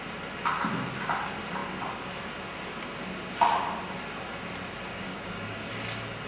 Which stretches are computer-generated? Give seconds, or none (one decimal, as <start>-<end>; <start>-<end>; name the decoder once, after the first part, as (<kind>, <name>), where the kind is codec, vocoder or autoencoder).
4.9-5.7 (codec, DAC)